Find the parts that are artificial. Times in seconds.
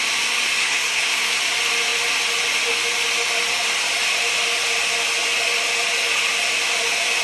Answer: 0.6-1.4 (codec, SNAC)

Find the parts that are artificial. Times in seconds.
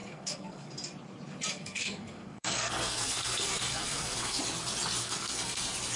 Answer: 0.0-0.7 (codec, SNAC); 1.5-4.4; 5.0-5.6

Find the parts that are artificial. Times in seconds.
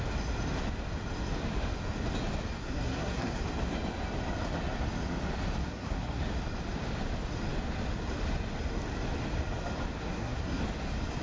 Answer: 2.6-3.4 (codec, SNAC); 5.6-6.2; 10.0-10.6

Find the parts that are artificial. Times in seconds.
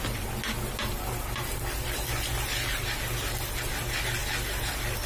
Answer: none